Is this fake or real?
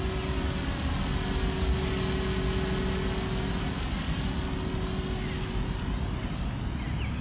real